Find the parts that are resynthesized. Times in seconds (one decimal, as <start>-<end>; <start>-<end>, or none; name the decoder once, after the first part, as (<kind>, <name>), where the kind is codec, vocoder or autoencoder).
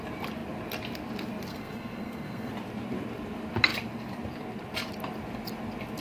1.5-2.5 (codec, SNAC)